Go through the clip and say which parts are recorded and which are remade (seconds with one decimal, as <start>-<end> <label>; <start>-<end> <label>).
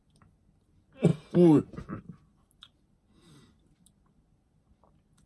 0.0-5.3 recorded